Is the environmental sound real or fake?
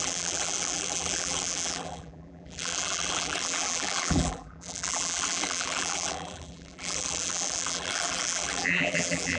fake